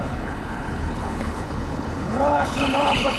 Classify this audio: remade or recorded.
remade